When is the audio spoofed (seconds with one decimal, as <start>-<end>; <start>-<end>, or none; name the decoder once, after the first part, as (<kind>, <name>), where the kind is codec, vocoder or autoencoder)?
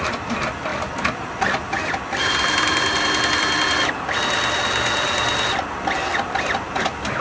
none